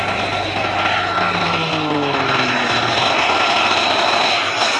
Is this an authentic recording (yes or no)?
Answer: yes